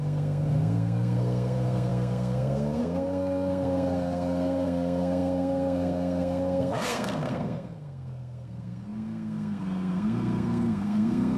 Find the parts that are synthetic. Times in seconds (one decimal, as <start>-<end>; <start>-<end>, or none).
0.0-11.4